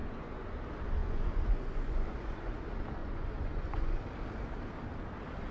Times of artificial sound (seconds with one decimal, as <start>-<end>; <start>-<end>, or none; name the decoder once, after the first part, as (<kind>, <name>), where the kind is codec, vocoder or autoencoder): 0.0-0.6 (vocoder, Vocos); 1.0-2.6; 3.0-4.0